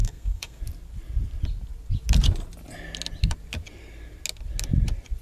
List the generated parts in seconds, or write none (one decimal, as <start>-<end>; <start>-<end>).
0.0-0.6